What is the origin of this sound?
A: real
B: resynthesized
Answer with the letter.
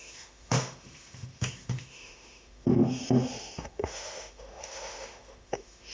B